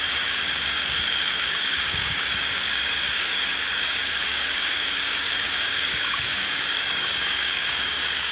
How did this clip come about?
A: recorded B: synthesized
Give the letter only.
B